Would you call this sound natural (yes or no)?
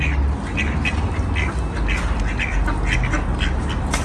yes